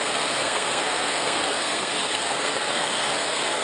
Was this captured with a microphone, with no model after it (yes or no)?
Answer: no